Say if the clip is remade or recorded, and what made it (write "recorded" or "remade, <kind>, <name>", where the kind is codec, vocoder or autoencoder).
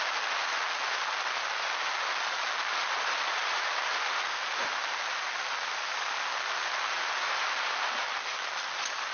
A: recorded